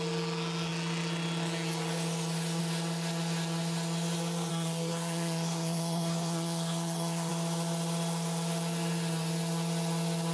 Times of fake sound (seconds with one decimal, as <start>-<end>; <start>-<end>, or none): 4.5-7.3